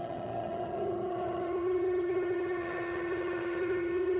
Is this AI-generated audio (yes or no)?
yes